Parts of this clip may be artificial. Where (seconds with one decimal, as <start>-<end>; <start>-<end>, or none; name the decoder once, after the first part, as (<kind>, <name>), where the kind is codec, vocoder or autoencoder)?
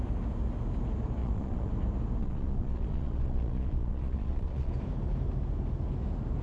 1.2-1.7 (vocoder, Vocos); 2.2-4.7